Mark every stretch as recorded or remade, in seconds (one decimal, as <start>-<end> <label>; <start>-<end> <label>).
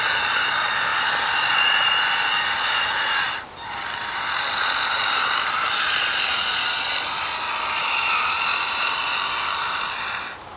0.0-10.6 recorded